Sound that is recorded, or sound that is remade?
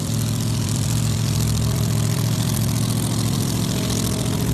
remade